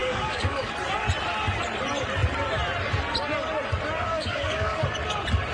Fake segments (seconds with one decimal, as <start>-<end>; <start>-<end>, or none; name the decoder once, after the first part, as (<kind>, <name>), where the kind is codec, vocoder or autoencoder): 0.0-0.7 (codec, DAC); 4.1-4.8